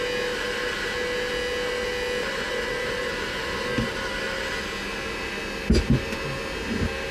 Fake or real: real